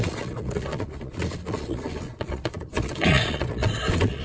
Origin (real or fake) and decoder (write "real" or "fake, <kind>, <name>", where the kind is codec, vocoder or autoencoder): fake, vocoder, Vocos